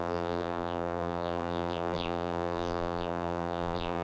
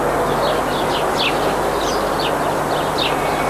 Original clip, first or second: second